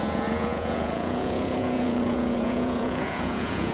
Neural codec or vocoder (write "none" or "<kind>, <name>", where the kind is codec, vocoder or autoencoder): vocoder, Vocos